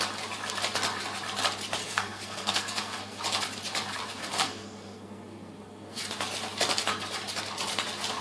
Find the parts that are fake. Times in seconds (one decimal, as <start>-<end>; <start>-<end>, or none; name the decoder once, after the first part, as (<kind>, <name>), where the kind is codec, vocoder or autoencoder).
1.8-3.2 (codec, SNAC); 4.0-6.0